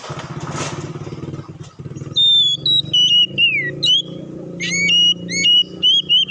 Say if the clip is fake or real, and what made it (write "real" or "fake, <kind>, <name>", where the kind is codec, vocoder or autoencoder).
real